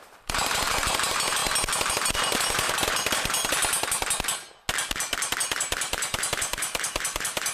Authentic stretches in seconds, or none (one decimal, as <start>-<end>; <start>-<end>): 1.4-1.9; 3.6-5.4